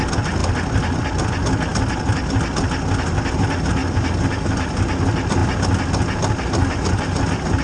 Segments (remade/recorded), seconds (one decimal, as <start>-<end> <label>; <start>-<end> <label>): 0.0-7.6 recorded